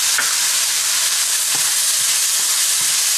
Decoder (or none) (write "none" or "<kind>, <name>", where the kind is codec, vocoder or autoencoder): none